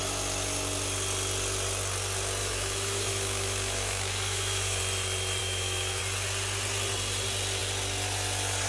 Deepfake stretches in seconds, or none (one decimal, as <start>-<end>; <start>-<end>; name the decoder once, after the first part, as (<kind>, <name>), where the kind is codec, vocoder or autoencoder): 2.4-4.8 (autoencoder, DAC-VAE); 5.4-6.0